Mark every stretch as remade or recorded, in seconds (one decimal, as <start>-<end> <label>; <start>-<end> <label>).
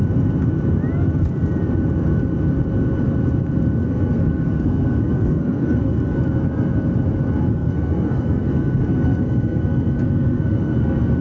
0.0-3.8 recorded; 3.8-6.2 remade; 6.2-7.5 recorded; 7.5-11.2 remade